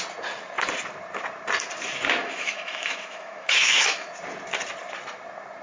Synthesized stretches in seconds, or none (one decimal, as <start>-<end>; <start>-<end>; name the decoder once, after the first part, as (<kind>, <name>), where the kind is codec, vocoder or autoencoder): 2.2-4.1 (autoencoder, DAC-VAE)